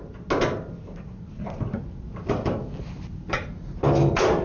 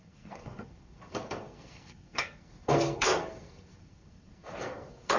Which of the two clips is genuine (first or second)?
first